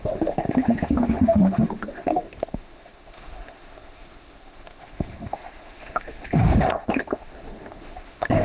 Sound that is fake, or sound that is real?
fake